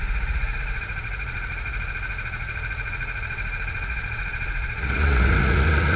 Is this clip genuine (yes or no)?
no